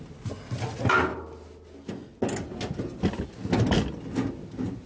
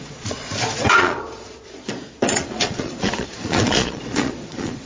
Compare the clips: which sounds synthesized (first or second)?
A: second